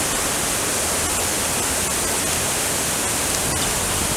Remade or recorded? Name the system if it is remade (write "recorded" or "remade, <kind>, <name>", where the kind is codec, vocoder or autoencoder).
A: recorded